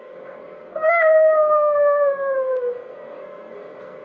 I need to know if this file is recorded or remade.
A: remade